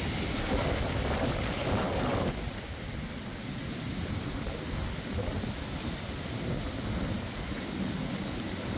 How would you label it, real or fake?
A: real